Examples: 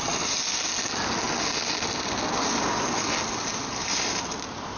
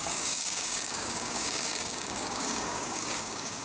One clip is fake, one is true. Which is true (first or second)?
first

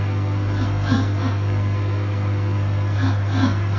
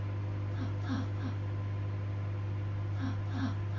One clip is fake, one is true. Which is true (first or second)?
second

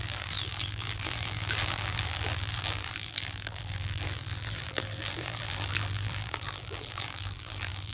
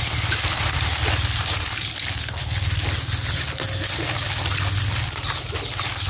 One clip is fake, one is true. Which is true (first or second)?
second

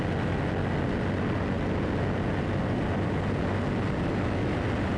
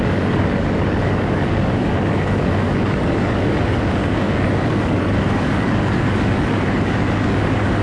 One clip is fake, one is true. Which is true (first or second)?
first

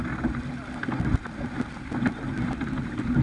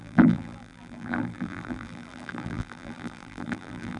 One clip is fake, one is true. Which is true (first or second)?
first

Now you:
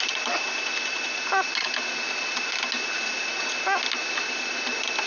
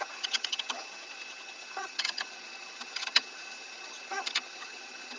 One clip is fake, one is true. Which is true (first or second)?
first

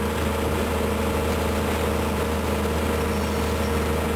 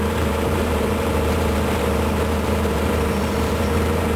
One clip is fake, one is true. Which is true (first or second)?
first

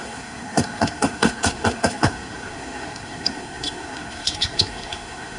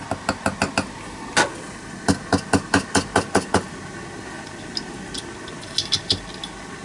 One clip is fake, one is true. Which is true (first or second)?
second